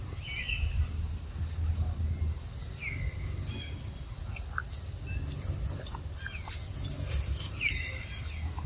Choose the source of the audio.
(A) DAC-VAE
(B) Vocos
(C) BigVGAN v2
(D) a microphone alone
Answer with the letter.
D